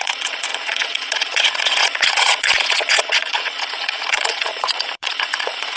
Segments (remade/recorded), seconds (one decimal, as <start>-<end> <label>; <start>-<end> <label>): 0.0-5.8 remade